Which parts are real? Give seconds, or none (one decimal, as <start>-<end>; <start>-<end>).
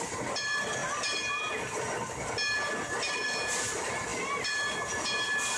0.0-5.6